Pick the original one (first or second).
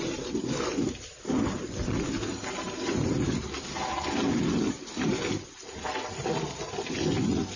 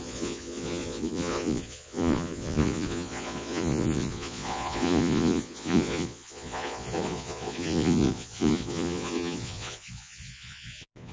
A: first